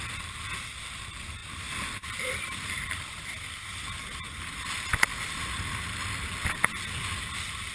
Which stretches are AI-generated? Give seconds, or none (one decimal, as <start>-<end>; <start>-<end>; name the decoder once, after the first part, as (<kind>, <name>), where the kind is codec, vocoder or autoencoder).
none